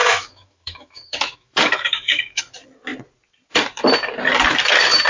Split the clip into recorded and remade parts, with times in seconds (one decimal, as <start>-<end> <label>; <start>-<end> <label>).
0.0-2.4 remade; 2.4-5.1 recorded